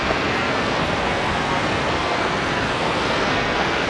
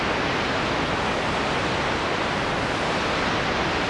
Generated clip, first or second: first